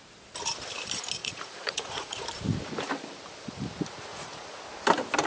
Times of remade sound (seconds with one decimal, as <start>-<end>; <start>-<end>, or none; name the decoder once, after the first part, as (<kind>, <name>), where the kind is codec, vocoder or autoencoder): 1.2-2.2 (vocoder, Vocos); 4.1-4.6